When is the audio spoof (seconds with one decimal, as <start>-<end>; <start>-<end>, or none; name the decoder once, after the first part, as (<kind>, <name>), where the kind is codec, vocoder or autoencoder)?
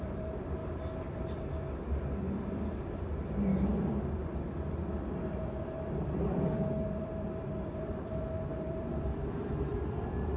0.0-0.6 (vocoder, BigVGAN v2); 2.8-10.4